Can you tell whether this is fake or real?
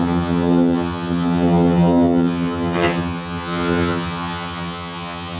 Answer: fake